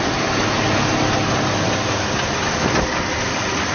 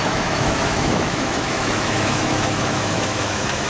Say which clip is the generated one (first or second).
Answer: second